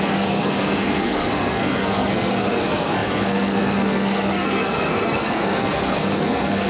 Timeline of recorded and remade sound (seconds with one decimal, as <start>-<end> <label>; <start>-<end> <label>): 0.0-6.7 remade